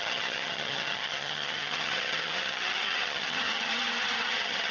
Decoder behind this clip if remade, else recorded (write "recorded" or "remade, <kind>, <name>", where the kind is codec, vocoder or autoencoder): remade, vocoder, HiFi-GAN